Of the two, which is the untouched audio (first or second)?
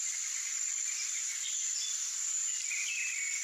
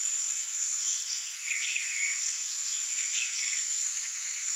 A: first